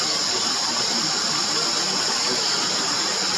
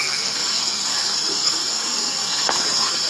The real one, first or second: first